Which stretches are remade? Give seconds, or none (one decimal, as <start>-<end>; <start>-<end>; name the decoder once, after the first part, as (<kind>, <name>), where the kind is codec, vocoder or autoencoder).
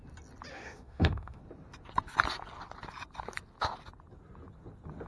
0.5-1.4 (autoencoder, DAC-VAE)